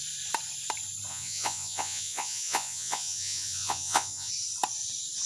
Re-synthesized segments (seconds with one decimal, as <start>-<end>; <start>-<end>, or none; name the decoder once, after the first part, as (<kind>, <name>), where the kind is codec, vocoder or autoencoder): 1.1-4.3 (vocoder, Vocos)